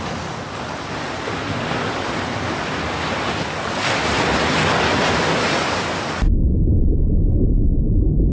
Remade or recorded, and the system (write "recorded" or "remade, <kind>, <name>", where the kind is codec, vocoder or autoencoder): recorded